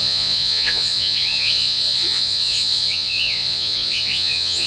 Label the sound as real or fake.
fake